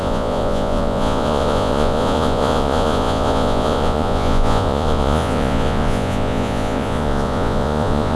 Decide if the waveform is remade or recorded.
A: remade